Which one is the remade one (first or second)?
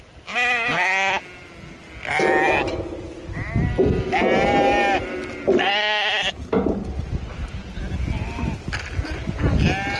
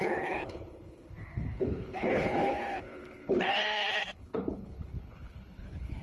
second